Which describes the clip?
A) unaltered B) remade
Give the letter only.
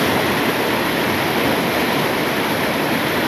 A